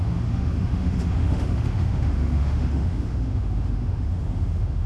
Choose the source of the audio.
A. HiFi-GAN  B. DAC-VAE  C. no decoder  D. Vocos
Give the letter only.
B